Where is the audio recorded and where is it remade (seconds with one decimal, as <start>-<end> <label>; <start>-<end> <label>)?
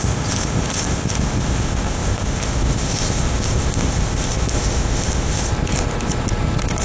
0.0-5.5 remade; 5.5-6.8 recorded